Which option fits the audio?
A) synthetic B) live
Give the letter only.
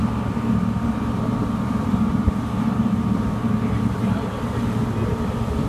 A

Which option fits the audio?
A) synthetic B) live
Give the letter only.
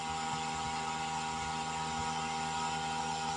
B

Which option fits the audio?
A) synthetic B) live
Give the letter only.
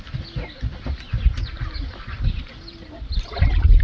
B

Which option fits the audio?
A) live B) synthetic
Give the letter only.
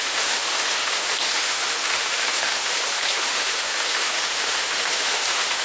B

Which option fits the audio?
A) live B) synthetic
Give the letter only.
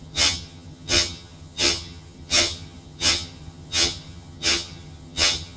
B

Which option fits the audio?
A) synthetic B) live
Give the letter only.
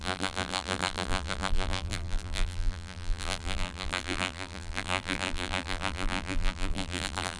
A